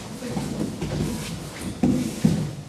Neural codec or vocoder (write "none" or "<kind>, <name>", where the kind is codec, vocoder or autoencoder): none